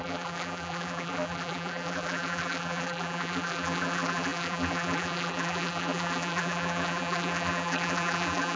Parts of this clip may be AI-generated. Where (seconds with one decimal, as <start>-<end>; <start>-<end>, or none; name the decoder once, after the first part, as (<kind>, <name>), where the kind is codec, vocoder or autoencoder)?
0.0-8.6 (vocoder, BigVGAN v2)